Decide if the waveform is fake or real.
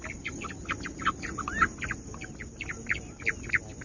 real